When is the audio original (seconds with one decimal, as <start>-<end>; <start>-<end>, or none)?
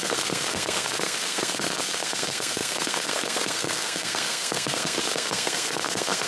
none